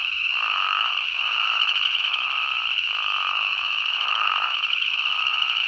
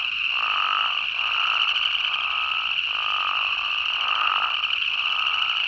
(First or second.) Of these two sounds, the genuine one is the second